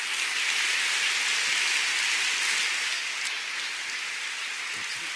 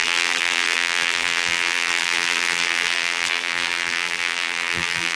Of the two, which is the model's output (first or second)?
second